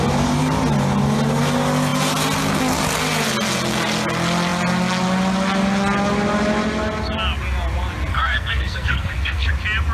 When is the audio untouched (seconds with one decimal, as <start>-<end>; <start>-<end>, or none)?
0.0-8.1; 9.5-9.9